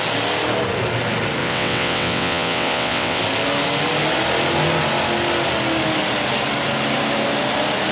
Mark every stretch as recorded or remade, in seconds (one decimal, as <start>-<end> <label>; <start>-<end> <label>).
0.0-1.4 recorded; 1.4-3.2 remade; 3.2-7.9 recorded